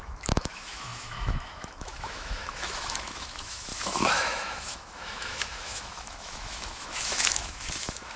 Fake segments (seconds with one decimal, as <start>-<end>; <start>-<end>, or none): 0.0-8.2